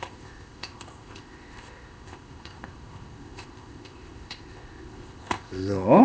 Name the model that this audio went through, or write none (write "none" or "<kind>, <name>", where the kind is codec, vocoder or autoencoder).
codec, ZipCodec